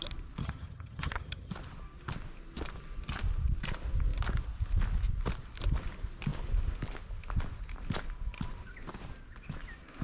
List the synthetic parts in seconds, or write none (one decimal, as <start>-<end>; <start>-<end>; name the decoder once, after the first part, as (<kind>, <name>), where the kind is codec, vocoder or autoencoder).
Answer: 0.4-1.5 (vocoder, HiFi-GAN)